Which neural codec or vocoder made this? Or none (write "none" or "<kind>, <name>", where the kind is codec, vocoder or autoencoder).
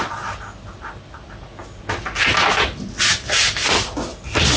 none